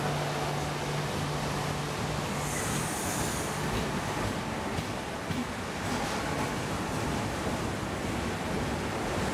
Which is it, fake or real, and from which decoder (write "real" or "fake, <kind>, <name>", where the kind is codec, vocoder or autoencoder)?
real